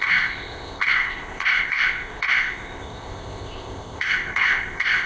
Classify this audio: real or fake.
fake